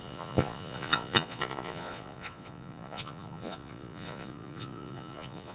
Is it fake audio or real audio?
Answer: fake